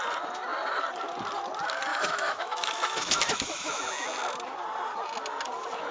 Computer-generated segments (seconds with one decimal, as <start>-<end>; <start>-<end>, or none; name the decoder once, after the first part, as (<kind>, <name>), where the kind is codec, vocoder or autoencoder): 1.9-3.8 (autoencoder, DAC-VAE)